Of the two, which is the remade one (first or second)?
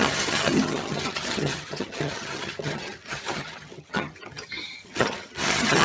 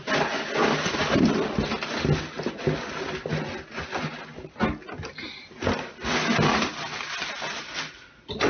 first